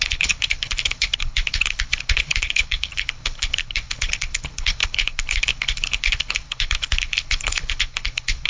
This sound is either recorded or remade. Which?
remade